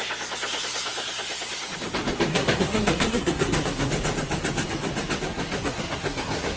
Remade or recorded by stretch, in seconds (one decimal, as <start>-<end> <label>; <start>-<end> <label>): 0.0-2.3 recorded; 2.3-3.9 remade; 3.9-5.3 recorded; 5.3-6.6 remade